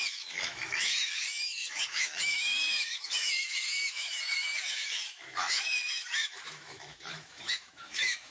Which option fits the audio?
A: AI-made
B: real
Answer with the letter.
A